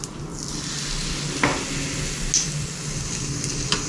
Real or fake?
real